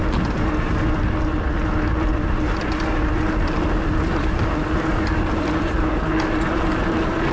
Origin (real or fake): real